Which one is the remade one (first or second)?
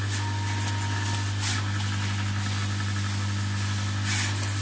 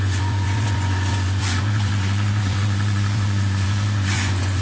second